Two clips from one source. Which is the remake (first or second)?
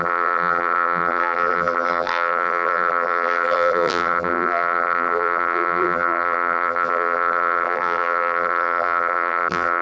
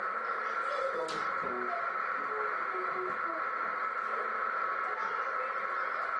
first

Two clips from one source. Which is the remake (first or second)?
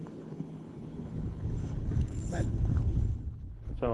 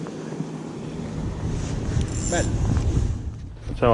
first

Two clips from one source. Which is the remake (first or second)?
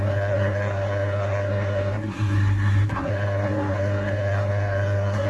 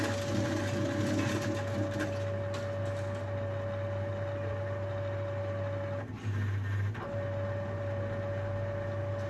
first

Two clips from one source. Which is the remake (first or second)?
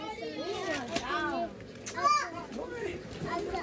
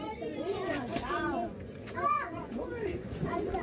second